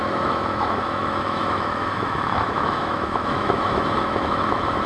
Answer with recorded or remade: remade